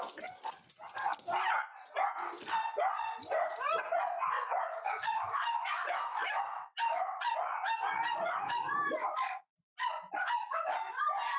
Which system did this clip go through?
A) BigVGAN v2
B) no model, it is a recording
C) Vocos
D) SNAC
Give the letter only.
B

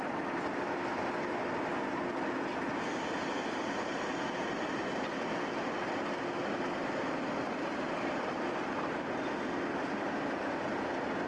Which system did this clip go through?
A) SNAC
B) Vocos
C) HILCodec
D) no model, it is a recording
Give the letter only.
D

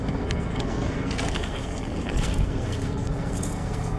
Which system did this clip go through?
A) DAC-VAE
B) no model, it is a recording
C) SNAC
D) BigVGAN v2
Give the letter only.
C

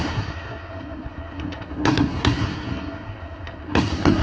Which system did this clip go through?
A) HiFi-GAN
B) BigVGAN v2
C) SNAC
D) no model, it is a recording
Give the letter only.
C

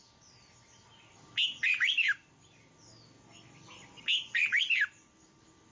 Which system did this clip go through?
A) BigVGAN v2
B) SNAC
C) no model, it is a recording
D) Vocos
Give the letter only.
C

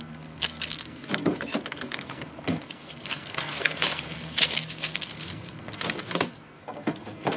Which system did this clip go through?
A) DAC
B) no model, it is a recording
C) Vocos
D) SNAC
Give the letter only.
D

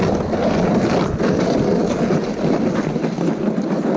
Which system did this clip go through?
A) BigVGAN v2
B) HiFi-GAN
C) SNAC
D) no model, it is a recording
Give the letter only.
D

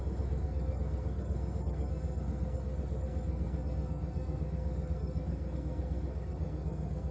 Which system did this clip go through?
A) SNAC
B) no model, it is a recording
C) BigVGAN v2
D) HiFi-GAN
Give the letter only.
A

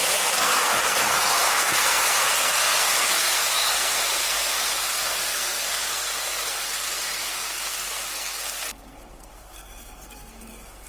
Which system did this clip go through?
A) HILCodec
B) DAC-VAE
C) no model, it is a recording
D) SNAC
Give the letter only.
D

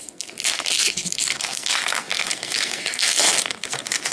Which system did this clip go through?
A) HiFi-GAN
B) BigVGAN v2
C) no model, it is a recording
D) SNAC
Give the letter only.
D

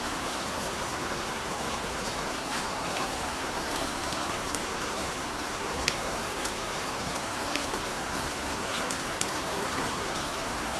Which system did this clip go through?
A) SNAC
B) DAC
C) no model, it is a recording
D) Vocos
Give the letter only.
A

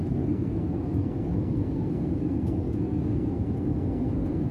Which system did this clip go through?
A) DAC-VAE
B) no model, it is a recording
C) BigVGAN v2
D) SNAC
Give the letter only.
D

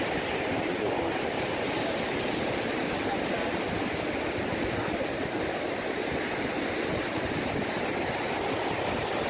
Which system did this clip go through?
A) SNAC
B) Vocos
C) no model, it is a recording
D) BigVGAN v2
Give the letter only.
C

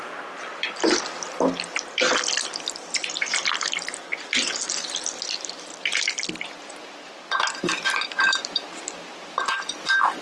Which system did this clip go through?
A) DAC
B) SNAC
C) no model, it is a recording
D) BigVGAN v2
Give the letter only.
C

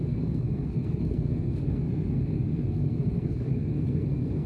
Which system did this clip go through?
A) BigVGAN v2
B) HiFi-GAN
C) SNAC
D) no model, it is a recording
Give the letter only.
C